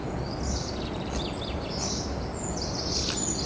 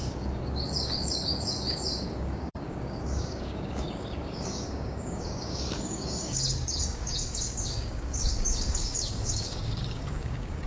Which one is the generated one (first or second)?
second